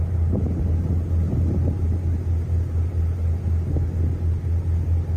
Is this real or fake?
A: real